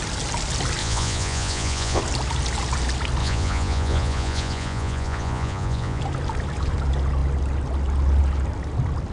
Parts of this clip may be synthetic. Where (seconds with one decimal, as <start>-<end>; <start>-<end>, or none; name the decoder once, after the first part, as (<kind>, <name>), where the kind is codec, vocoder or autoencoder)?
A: 0.8-2.0 (vocoder, Vocos); 3.2-6.0